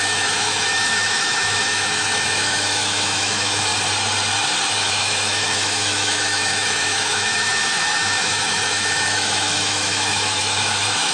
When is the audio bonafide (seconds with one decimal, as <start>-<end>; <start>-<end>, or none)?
3.7-4.7